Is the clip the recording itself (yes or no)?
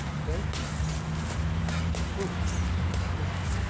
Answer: yes